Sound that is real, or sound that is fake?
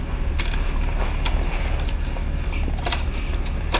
real